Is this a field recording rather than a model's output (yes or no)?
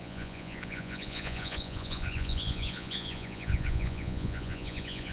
no